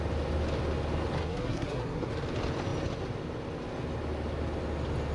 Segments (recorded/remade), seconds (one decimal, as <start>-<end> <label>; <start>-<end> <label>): 0.0-1.2 recorded; 1.2-2.1 remade; 2.1-5.1 recorded